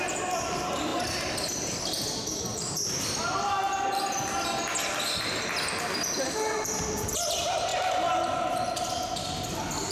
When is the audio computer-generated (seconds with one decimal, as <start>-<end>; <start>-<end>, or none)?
none